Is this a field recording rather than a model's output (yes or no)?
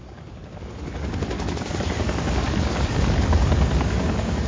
no